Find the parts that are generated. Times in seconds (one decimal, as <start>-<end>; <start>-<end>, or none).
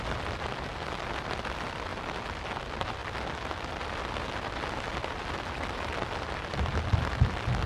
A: none